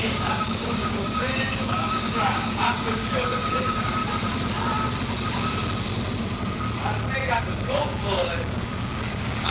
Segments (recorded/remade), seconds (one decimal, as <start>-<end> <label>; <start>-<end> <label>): 0.0-4.0 remade; 4.0-7.4 recorded; 7.4-9.5 remade